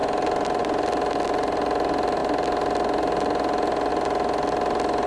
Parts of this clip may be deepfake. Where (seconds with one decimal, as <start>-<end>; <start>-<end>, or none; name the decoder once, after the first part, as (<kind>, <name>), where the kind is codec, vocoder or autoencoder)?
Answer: none